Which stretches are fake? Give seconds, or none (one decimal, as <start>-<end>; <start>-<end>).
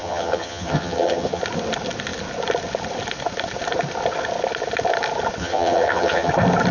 0.0-1.4; 5.4-6.3